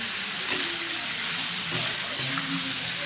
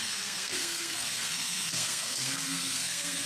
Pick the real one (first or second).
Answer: first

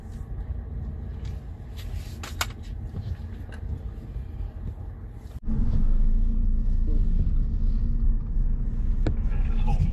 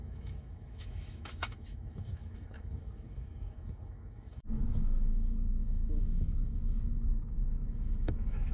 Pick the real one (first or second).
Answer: first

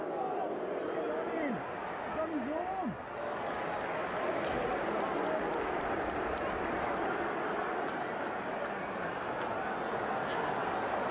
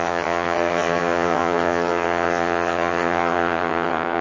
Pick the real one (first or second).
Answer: first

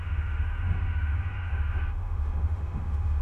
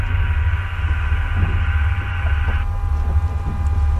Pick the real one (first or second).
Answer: second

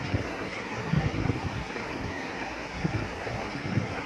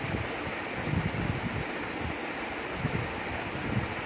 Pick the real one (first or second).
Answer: second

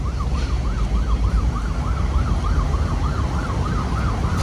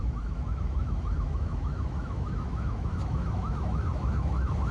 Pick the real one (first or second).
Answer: first